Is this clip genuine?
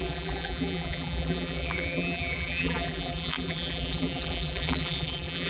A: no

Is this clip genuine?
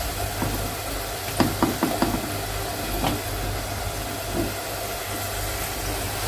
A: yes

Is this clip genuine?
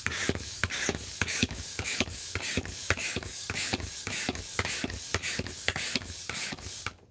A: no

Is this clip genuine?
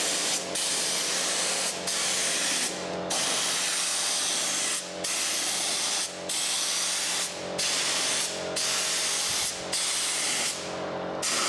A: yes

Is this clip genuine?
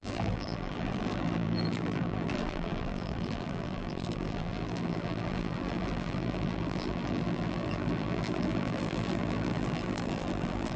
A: no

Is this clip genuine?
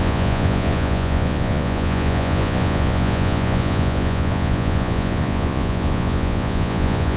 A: no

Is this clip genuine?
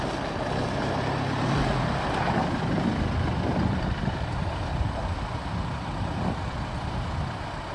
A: no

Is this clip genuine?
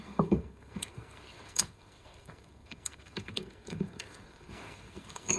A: no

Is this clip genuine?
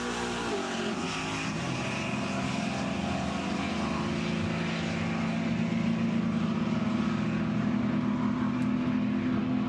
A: yes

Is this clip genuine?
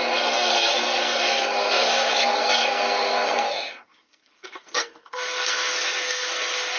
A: no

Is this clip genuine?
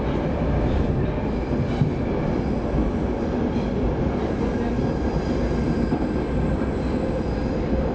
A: yes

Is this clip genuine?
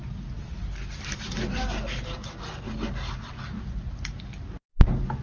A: yes